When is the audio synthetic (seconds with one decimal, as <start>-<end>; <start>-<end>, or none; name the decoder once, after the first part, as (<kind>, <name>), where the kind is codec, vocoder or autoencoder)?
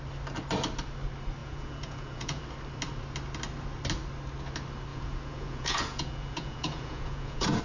1.4-2.4 (vocoder, Vocos); 4.9-7.6